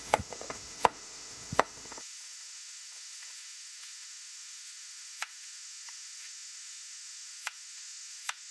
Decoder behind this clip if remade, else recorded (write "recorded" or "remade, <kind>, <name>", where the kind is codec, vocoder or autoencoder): remade, autoencoder, DAC-VAE